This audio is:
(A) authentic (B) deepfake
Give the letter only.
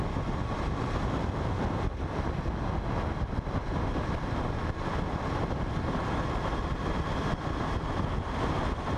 A